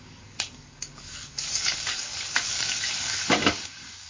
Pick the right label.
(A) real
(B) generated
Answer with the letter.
B